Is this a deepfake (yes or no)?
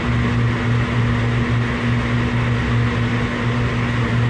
no